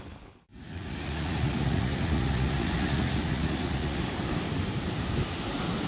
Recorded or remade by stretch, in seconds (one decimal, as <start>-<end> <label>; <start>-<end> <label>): 0.0-0.5 recorded; 0.5-4.0 remade; 4.0-5.9 recorded

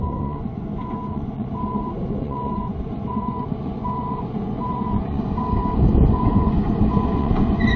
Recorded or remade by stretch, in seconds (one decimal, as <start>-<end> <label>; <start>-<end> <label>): 0.0-5.6 remade; 5.6-6.1 recorded; 6.1-7.8 remade

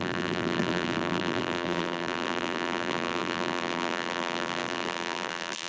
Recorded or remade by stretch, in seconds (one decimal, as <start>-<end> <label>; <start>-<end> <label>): 0.0-5.7 remade

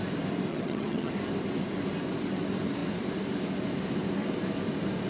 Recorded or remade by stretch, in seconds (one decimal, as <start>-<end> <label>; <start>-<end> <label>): 0.0-0.5 recorded; 0.5-1.1 remade; 1.1-5.1 recorded

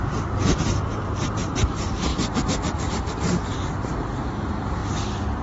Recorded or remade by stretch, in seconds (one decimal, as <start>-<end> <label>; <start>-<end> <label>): 0.0-2.1 remade; 2.1-2.8 recorded; 2.8-4.8 remade; 4.8-5.4 recorded

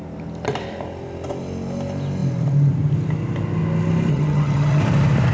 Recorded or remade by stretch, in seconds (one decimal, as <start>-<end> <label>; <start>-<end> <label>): 0.0-4.1 recorded; 4.1-4.8 remade; 4.8-5.3 recorded

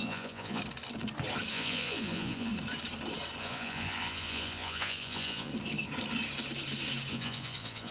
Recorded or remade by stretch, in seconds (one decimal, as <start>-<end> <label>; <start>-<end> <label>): 0.0-0.6 remade; 0.6-1.5 recorded; 1.5-2.5 remade; 2.5-3.4 recorded; 3.4-5.5 remade; 5.5-7.1 recorded; 7.1-7.9 remade